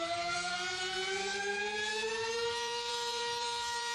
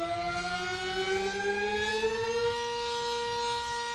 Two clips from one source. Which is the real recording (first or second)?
second